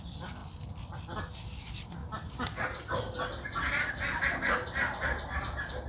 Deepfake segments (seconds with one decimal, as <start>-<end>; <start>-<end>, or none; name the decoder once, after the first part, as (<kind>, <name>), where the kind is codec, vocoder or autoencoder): none